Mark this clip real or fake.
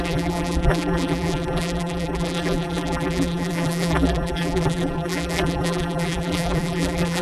fake